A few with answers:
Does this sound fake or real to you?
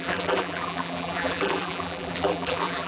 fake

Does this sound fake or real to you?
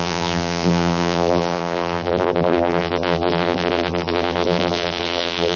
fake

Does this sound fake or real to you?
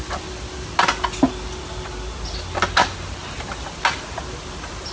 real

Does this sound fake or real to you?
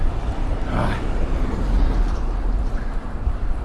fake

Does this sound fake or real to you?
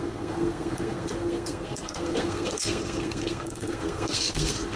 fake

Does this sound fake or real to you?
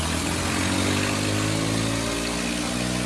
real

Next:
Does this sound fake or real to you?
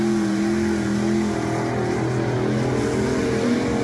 real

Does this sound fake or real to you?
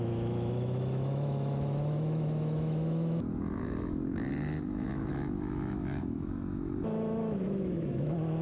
fake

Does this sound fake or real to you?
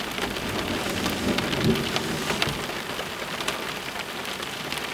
real